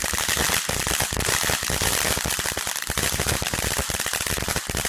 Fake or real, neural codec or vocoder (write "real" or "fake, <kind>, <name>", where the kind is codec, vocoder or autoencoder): real